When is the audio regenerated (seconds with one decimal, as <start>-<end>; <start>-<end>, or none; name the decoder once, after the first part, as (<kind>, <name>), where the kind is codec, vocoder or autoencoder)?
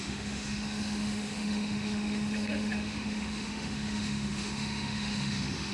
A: 0.0-5.7 (autoencoder, DAC-VAE)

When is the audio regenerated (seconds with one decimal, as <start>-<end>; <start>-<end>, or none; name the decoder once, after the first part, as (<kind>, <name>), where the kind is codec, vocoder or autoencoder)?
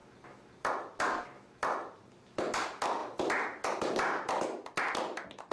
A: none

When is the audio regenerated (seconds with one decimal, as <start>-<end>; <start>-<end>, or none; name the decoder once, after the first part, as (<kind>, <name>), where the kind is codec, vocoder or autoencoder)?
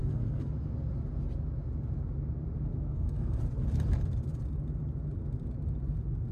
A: 0.0-0.5 (codec, SNAC); 2.7-3.4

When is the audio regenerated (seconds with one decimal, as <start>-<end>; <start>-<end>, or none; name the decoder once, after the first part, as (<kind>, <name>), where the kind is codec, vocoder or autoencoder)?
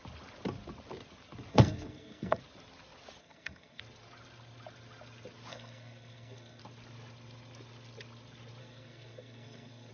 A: 1.5-2.4 (codec, SNAC); 3.2-3.8; 5.5-6.6; 8.6-9.9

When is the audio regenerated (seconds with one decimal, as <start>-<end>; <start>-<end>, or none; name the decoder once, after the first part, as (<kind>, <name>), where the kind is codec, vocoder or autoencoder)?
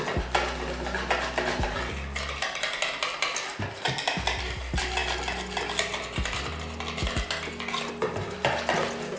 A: none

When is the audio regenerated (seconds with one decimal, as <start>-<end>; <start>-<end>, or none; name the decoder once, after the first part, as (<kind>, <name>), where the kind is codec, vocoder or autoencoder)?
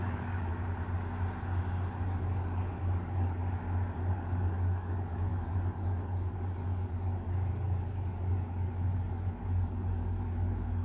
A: 0.0-0.5 (codec, DAC); 1.9-3.4; 4.1-10.8